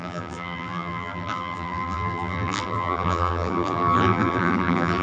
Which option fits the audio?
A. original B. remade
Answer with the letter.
B